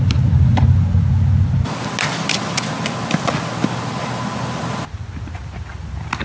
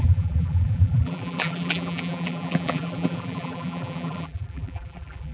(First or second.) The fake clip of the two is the second